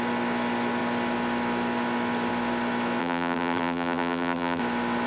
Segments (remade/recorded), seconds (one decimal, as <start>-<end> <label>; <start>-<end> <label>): 0.0-3.0 recorded; 3.0-4.6 remade; 4.6-5.1 recorded